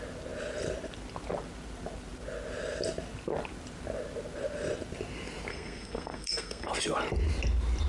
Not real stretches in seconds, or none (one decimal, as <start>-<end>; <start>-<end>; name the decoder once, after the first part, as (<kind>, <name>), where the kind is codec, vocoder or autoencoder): 5.5-6.7 (codec, SNAC)